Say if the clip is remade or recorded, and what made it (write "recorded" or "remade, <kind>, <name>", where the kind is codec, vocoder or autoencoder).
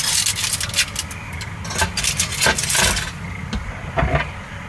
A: recorded